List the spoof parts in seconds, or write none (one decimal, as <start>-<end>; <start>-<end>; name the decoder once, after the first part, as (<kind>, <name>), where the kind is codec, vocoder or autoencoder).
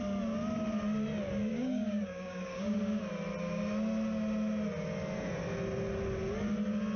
1.5-3.0 (codec, DAC)